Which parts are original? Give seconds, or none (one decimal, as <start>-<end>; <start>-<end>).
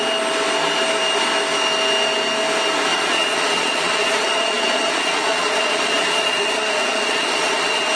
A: 0.0-2.9